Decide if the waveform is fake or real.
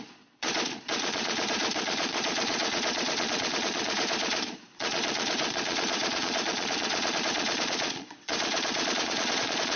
fake